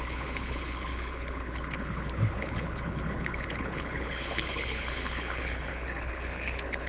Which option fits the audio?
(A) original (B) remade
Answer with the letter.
B